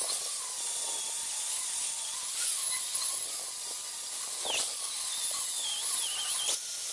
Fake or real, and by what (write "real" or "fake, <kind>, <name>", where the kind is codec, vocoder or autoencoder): real